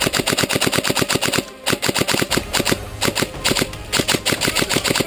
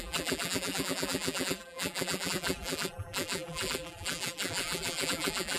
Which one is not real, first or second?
second